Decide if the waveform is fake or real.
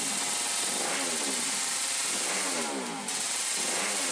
real